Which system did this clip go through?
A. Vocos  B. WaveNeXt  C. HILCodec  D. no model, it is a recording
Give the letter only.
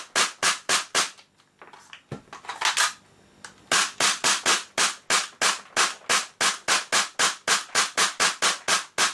D